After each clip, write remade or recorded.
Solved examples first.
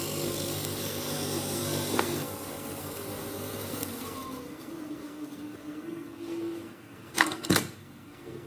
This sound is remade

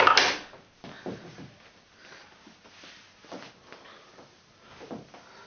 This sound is recorded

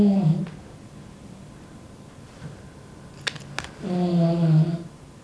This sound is recorded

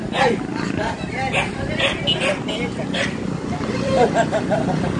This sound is recorded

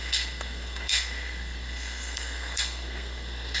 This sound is remade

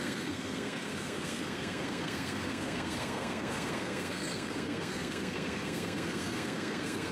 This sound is remade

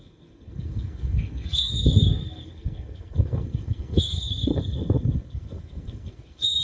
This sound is remade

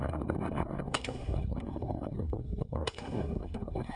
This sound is remade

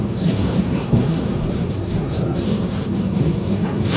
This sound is remade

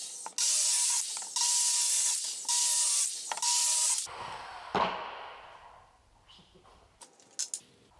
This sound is recorded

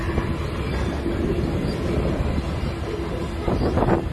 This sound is recorded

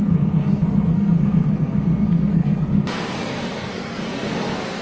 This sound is remade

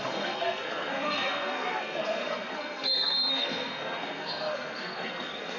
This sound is remade